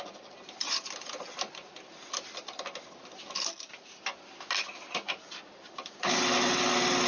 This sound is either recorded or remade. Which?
recorded